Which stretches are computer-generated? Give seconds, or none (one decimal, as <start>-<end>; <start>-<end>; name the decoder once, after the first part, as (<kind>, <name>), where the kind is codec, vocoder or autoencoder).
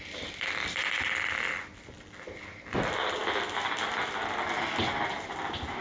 none